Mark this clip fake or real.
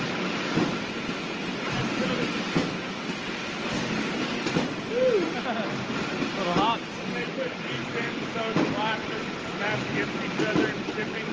real